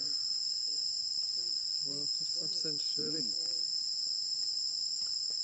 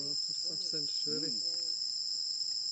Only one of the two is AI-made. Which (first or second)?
first